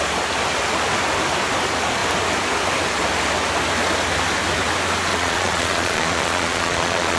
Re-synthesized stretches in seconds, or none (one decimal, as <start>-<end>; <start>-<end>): 5.1-7.2